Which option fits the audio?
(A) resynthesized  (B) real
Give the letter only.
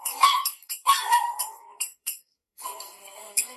A